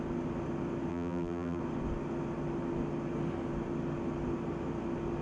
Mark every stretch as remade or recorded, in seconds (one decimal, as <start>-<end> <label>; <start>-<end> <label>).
0.0-0.9 recorded; 0.9-1.6 remade; 1.6-5.2 recorded